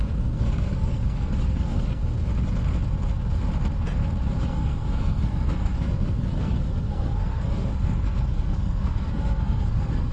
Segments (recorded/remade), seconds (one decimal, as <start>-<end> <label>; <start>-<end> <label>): 0.0-2.0 remade; 2.0-4.4 recorded; 4.4-10.1 remade